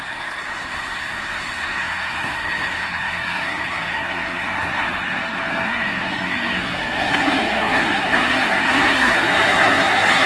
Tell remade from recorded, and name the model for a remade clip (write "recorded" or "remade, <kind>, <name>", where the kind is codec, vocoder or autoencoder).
remade, codec, SNAC